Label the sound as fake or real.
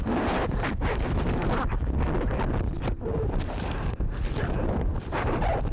fake